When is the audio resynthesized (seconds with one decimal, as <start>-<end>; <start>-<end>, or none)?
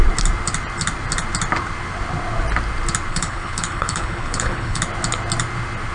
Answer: 3.1-4.8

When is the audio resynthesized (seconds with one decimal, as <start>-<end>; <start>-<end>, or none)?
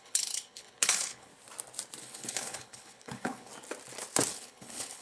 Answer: 0.0-1.3; 2.0-3.5; 4.3-5.0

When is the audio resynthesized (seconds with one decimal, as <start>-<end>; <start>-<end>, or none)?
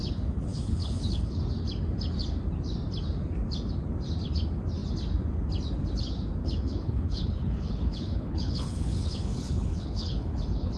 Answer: 0.5-1.4; 6.4-10.8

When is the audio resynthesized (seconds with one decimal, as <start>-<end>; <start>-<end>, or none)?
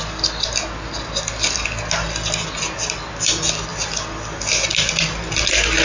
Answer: none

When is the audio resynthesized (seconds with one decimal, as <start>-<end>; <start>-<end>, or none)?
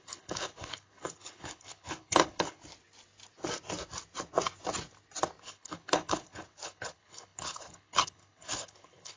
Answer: 0.0-2.6; 5.4-9.2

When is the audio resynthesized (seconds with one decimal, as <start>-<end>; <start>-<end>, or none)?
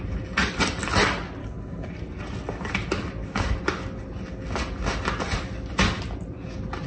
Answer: 1.4-1.9